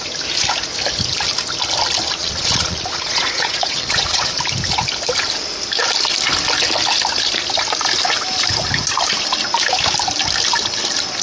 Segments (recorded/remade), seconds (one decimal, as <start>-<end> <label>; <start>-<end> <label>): 0.0-2.2 recorded; 2.2-4.4 remade; 4.4-11.2 recorded